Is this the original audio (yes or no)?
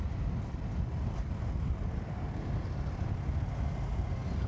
yes